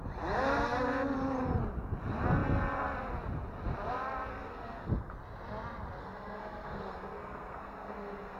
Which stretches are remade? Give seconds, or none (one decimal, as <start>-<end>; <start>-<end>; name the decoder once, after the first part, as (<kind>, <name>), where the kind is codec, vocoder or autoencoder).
4.3-5.1 (codec, SNAC); 6.0-8.4